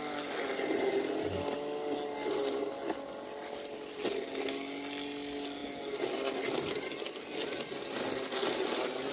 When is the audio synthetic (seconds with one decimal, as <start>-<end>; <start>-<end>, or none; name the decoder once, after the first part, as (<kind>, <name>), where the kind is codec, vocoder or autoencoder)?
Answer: none